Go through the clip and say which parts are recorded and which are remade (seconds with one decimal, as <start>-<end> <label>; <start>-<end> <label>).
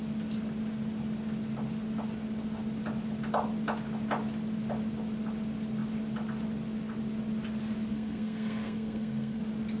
0.0-7.9 recorded; 7.9-9.4 remade; 9.4-9.8 recorded